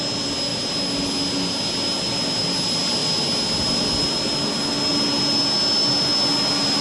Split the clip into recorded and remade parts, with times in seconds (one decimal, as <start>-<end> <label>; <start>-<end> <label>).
0.0-6.8 recorded